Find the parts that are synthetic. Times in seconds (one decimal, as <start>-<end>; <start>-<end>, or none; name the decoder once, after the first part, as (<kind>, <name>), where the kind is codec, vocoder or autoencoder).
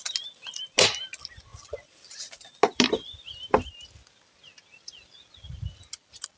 none